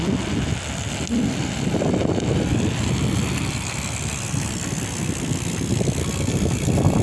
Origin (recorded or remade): recorded